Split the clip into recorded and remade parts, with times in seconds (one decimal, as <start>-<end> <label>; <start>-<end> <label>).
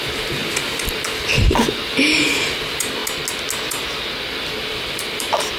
0.0-3.0 remade; 3.0-4.3 recorded; 4.3-5.6 remade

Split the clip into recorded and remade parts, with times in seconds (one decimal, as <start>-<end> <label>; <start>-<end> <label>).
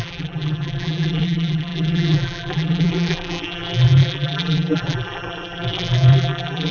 0.0-6.7 remade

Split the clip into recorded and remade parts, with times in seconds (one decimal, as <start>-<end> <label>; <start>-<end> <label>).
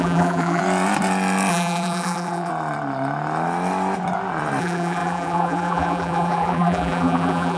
0.0-0.6 remade; 0.6-1.5 recorded; 1.5-2.5 remade; 2.5-4.6 recorded; 4.6-7.6 remade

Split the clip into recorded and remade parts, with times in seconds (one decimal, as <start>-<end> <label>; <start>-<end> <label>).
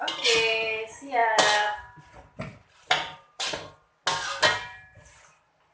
0.0-1.2 recorded; 1.2-2.0 remade; 2.0-2.5 recorded; 2.5-3.5 remade; 3.5-5.7 recorded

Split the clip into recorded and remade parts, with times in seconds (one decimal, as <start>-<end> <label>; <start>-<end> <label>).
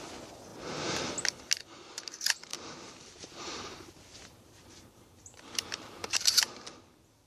0.0-2.5 recorded; 2.5-6.5 remade; 6.5-7.3 recorded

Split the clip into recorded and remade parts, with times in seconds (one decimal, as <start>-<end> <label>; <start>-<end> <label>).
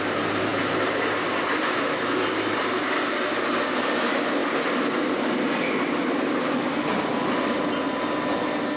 0.0-0.5 recorded; 0.5-2.7 remade; 2.7-8.8 recorded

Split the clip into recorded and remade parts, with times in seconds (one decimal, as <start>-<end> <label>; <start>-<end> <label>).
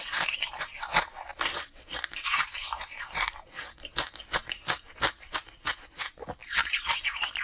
0.0-7.4 remade